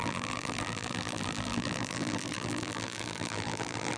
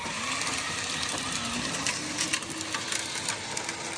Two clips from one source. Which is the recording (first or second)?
second